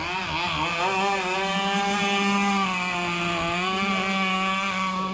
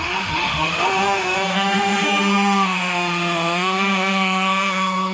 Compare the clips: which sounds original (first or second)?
first